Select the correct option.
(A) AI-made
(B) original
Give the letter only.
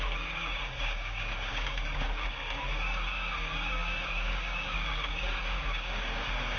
A